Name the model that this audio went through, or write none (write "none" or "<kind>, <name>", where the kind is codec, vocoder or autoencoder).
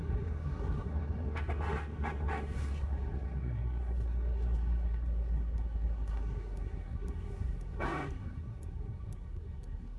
codec, SNAC